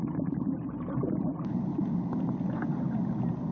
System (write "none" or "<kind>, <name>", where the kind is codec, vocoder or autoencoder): none